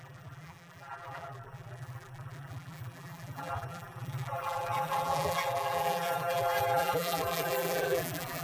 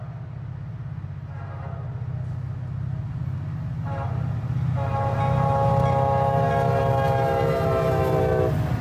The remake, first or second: first